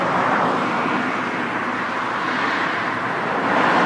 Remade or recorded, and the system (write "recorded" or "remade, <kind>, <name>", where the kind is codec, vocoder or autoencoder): recorded